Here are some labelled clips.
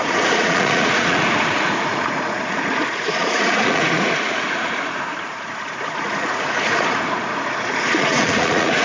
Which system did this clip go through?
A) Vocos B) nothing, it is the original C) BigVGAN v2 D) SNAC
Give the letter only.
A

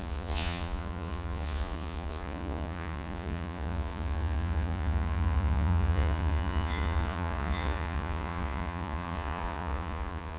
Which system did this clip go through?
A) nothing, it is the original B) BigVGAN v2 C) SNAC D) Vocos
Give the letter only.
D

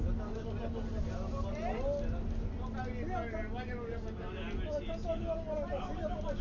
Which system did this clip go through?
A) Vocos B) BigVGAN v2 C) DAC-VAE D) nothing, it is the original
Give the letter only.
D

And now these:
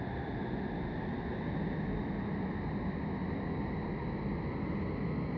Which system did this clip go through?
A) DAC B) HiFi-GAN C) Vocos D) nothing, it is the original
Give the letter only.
D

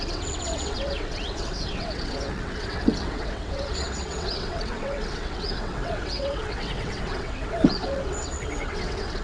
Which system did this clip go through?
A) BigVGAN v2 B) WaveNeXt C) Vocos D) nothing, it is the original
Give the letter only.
B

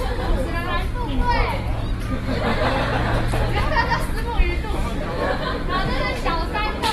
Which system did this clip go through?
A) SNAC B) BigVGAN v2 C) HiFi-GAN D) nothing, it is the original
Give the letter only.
D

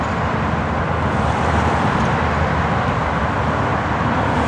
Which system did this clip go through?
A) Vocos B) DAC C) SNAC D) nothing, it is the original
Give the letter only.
D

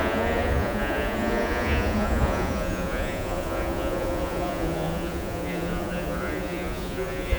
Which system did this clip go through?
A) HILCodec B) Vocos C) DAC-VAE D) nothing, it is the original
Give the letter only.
B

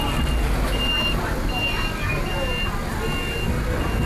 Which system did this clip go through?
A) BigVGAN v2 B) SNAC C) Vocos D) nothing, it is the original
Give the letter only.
D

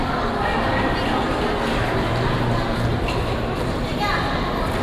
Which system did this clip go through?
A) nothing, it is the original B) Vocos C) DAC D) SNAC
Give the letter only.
A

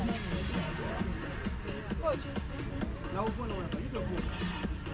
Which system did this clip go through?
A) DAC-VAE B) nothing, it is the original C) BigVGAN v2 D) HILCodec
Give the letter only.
B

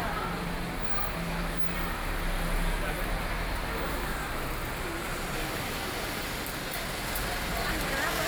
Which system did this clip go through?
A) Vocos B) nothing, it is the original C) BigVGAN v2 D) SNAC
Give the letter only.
B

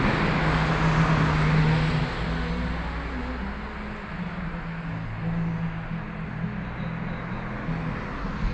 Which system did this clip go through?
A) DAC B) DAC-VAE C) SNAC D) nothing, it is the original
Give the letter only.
D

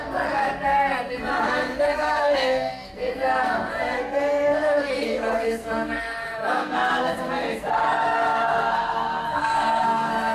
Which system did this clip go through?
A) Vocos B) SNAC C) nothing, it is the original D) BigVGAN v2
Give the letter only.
B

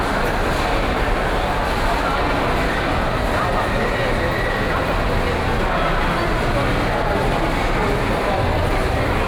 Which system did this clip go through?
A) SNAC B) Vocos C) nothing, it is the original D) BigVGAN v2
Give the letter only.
C